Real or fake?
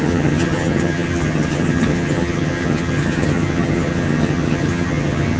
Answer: fake